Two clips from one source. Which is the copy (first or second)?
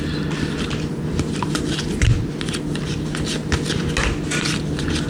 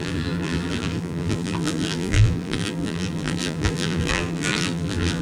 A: second